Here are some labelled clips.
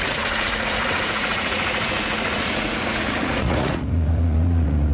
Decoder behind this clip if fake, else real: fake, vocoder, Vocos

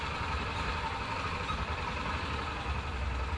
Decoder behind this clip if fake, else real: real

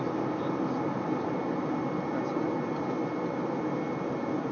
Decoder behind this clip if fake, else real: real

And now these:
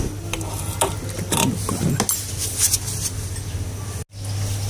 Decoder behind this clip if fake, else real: real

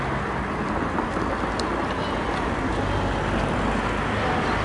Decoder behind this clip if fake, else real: real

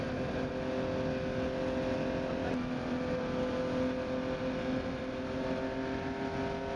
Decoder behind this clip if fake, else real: real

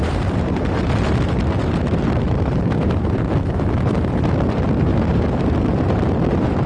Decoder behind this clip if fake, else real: fake, vocoder, BigVGAN v2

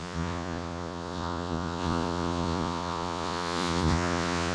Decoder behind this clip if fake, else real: fake, vocoder, Vocos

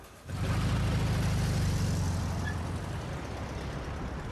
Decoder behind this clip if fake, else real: real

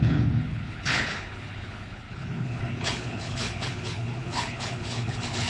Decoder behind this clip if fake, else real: fake, codec, HILCodec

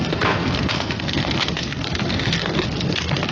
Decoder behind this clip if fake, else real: fake, codec, SNAC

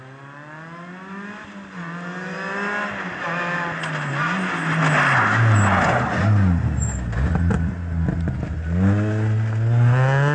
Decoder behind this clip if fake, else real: real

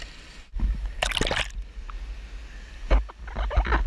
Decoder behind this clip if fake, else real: real